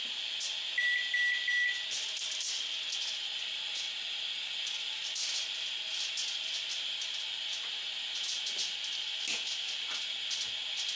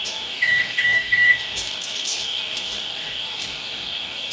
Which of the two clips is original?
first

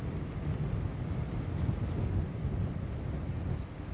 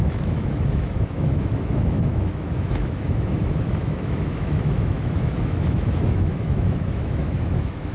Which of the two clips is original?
first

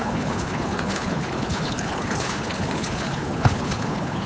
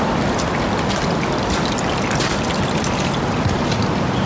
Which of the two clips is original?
second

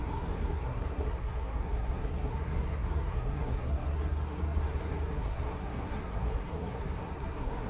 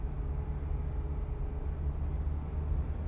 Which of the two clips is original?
second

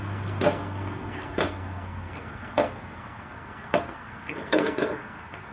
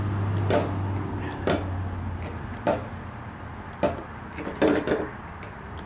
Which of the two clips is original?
second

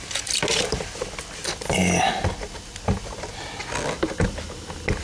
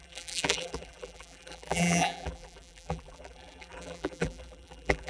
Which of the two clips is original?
first